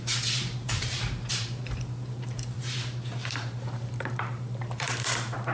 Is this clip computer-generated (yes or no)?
yes